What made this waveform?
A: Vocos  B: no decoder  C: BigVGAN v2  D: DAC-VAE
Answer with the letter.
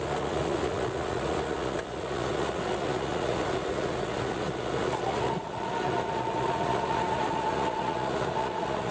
A